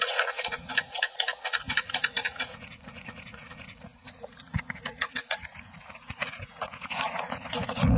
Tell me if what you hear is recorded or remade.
remade